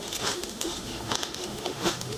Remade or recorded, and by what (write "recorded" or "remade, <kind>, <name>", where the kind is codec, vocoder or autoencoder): remade, autoencoder, DAC-VAE